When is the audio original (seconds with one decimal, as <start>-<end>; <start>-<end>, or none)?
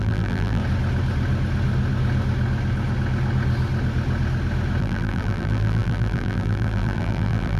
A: 0.6-4.8